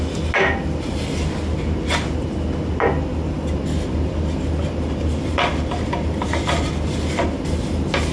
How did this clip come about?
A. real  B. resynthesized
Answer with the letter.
A